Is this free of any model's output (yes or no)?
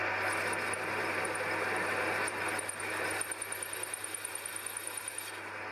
yes